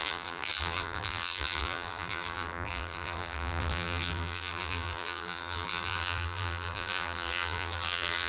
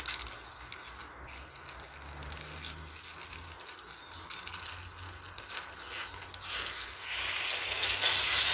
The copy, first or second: first